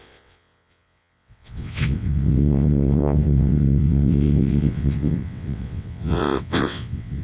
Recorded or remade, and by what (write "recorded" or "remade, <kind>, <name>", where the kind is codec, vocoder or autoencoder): remade, vocoder, WaveNeXt